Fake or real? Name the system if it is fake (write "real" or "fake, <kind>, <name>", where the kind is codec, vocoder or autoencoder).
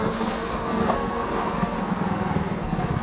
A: fake, codec, SNAC